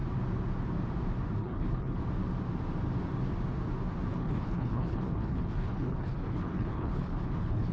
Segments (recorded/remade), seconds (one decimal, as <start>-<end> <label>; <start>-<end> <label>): 0.0-1.4 recorded; 1.4-2.0 remade; 2.0-4.1 recorded; 4.1-7.7 remade